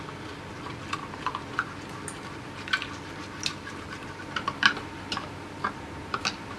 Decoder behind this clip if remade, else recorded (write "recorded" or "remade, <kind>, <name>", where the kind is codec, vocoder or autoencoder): recorded